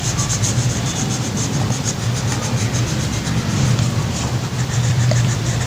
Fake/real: fake